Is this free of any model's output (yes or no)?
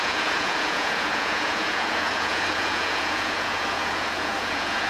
no